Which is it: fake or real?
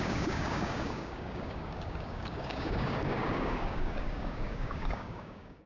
fake